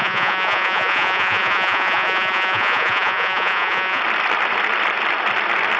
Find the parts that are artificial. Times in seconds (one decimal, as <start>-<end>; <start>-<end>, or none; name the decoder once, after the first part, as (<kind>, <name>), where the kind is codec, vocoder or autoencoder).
0.0-4.0 (vocoder, Vocos)